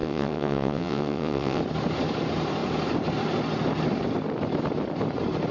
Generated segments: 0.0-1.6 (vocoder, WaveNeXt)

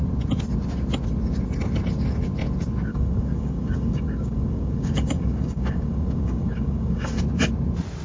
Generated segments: 2.9-7.2 (codec, DAC)

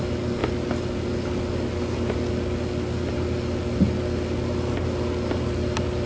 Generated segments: none

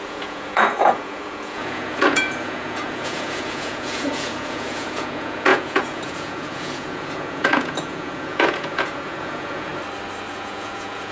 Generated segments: 0.0-9.7 (vocoder, Vocos); 10.3-11.1

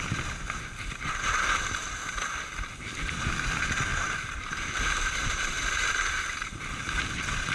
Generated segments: 3.9-6.6 (vocoder, BigVGAN v2)

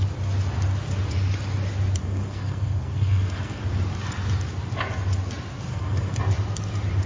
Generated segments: 2.0-3.6 (codec, SNAC); 5.7-6.2

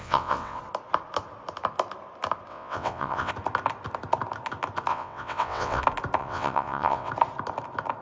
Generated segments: 0.0-0.6 (vocoder, WaveNeXt); 2.5-3.3; 4.9-5.8; 6.2-7.1